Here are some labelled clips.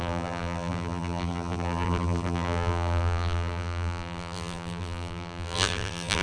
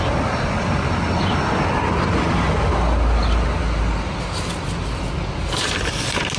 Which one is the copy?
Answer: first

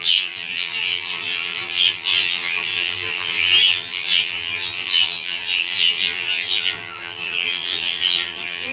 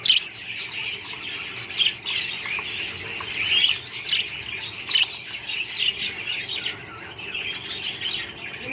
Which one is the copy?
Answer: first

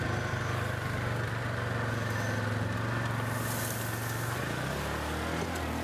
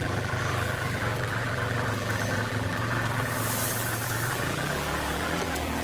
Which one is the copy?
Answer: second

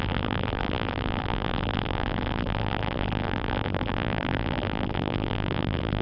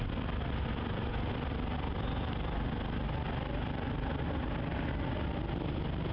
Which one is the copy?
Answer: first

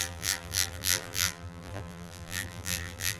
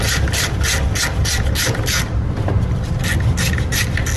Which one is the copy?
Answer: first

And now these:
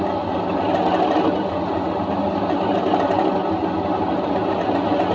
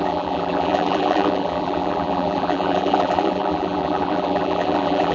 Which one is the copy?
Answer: second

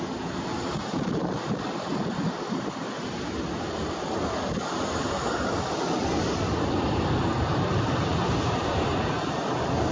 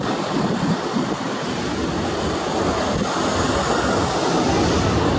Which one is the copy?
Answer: first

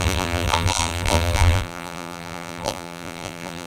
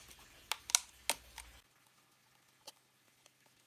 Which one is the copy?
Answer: first